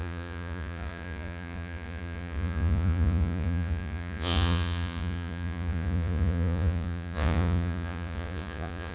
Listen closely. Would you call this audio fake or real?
fake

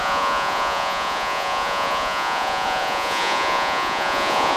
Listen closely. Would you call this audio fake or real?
fake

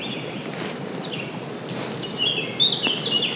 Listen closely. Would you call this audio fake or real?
real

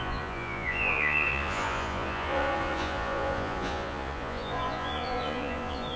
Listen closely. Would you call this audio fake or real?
fake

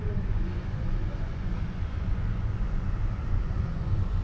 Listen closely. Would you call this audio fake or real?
fake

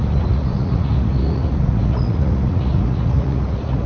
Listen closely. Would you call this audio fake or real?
fake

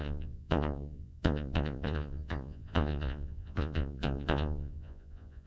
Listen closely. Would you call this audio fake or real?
fake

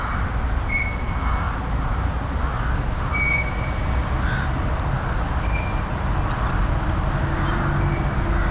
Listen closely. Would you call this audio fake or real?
real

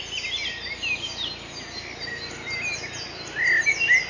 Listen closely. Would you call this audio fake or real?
real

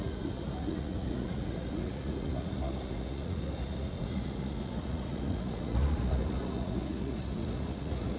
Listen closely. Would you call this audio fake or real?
fake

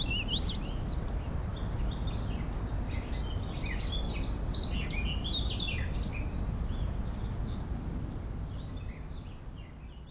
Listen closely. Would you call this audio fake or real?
real